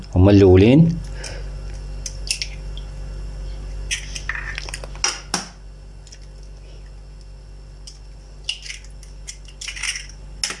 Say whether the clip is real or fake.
real